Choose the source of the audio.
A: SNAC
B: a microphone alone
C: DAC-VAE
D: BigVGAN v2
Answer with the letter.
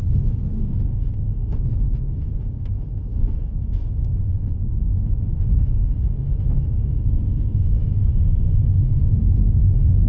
C